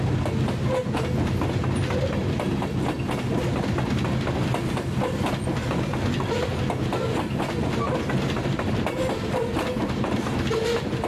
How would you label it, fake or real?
real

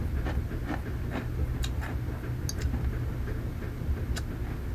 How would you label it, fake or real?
real